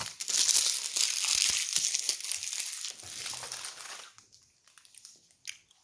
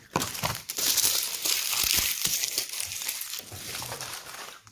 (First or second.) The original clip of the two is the first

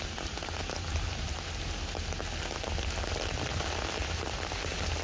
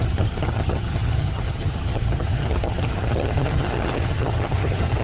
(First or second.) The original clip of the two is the first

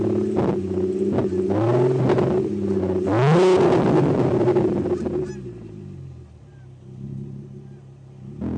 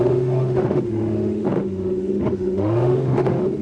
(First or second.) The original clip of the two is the first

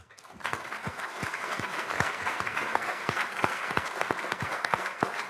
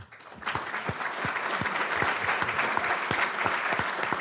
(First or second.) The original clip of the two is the second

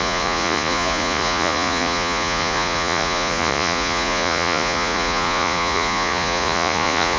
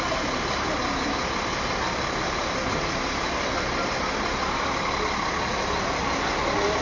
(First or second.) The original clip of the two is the second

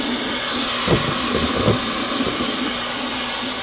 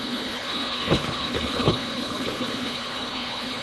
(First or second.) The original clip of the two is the first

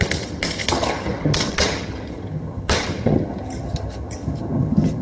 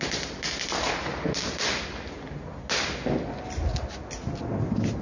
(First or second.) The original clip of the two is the second